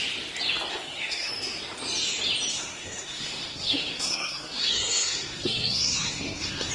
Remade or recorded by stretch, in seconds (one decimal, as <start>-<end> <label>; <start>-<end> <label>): 0.0-0.7 recorded; 0.7-1.3 remade; 1.3-2.5 recorded; 2.5-6.7 remade